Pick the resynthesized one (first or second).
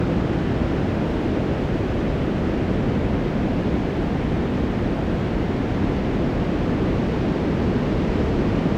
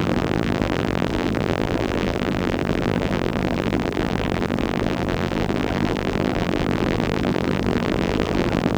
second